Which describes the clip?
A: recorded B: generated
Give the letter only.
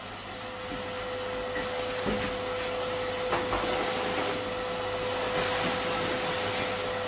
A